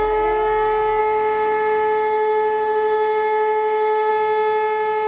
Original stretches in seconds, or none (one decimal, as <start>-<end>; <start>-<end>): 0.0-1.0; 4.1-5.1